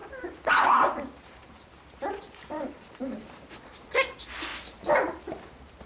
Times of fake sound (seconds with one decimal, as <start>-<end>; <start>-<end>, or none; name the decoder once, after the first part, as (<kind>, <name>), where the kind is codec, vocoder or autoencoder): 0.0-3.5 (vocoder, BigVGAN v2); 4.5-5.2